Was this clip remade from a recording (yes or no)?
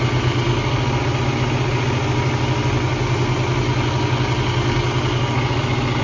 no